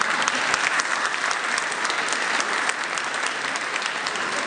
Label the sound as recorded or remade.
recorded